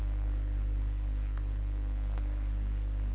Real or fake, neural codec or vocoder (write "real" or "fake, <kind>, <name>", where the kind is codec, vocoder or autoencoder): fake, codec, SNAC